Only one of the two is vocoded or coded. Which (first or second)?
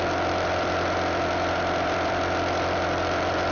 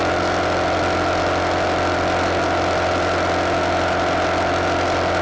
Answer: first